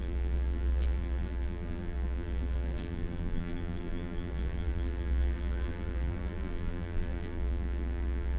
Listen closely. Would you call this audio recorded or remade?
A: remade